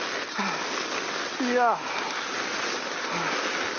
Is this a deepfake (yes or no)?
no